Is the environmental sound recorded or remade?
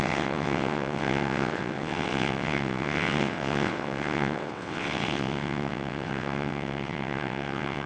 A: remade